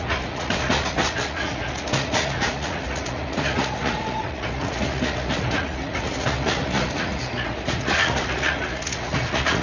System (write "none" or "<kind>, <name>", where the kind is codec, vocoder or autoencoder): vocoder, Vocos